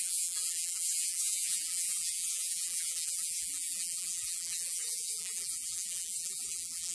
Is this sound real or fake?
fake